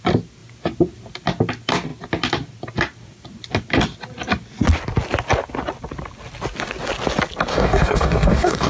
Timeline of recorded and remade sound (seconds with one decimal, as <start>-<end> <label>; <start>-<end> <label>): 0.0-7.5 recorded; 7.5-8.7 remade